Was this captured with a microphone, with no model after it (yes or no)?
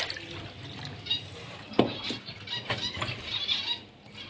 yes